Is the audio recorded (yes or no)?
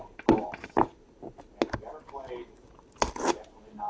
yes